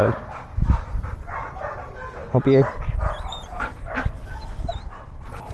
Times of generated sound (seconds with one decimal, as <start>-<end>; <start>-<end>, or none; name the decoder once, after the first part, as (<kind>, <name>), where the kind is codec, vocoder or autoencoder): none